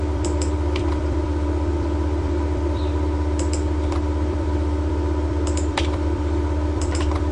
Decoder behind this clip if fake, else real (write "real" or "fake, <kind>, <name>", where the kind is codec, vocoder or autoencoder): fake, vocoder, BigVGAN v2